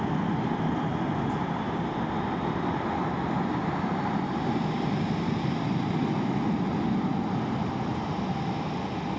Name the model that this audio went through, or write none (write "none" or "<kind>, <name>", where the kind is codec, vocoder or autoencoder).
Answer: none